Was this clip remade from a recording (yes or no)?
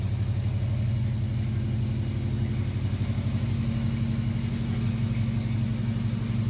no